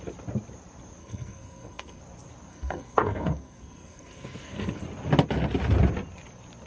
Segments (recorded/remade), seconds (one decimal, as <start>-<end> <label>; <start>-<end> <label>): 0.0-1.0 recorded; 1.0-2.0 remade; 2.0-2.5 recorded; 2.5-4.8 remade; 4.8-6.7 recorded